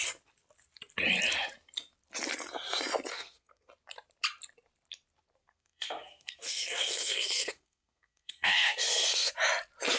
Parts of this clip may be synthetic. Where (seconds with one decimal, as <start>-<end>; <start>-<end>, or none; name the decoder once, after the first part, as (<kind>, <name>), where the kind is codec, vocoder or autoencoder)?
3.1-3.7 (codec, SNAC); 5.4-9.3